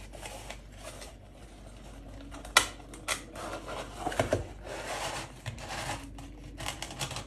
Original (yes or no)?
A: yes